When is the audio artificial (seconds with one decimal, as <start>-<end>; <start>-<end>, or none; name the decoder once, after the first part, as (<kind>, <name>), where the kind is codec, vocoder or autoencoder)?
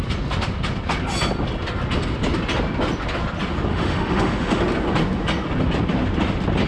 3.7-4.6 (autoencoder, DAC-VAE)